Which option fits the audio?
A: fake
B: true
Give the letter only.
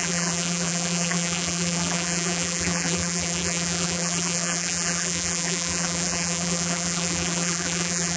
A